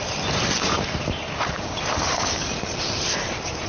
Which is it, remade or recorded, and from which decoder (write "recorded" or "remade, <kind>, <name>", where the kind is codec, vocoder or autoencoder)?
remade, vocoder, BigVGAN v2